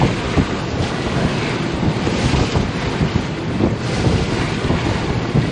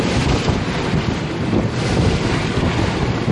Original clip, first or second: first